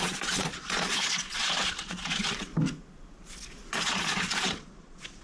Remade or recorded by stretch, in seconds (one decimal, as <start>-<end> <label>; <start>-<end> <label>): 0.0-2.5 remade; 2.5-3.9 recorded; 3.9-5.2 remade